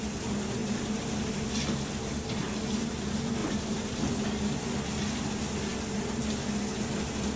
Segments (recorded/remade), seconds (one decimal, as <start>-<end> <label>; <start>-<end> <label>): 0.0-0.6 recorded; 0.6-1.3 remade; 1.3-2.4 recorded; 2.4-2.9 remade; 2.9-3.4 recorded; 3.4-4.0 remade; 4.0-7.4 recorded